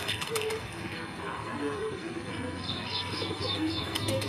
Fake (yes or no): yes